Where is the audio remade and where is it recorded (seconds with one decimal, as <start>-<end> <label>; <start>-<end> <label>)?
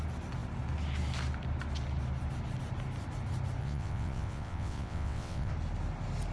0.0-3.6 recorded; 3.6-5.5 remade; 5.5-6.3 recorded